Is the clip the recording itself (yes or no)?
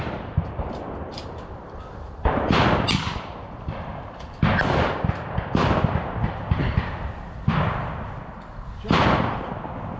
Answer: no